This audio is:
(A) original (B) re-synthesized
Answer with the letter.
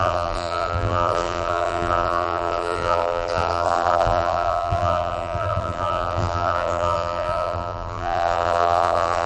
B